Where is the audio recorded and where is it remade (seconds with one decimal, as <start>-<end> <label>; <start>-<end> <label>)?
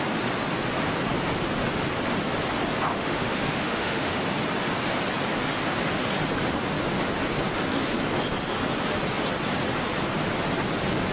0.0-2.9 recorded; 2.9-4.2 remade; 4.2-11.1 recorded